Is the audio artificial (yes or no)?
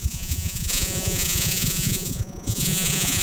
yes